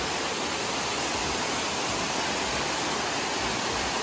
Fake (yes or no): no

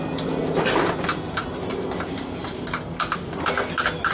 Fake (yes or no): no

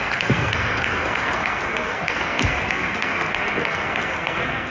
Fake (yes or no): yes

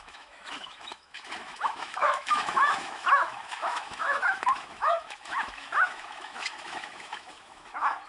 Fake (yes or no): yes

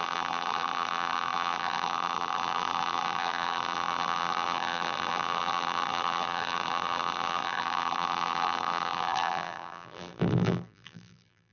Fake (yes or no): yes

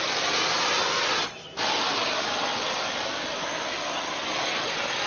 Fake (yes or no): no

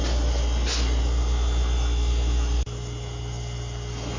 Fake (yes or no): no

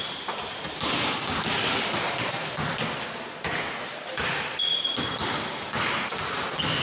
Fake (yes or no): no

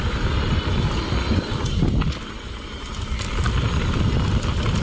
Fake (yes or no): no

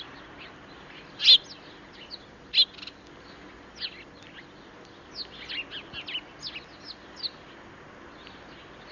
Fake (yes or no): no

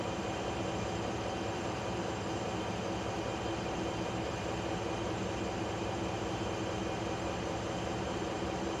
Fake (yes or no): yes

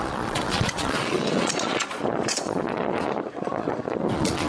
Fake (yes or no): yes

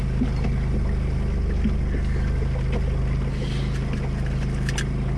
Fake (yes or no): no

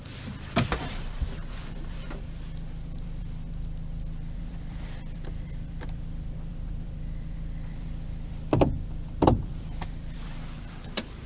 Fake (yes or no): yes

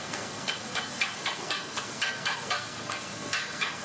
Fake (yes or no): yes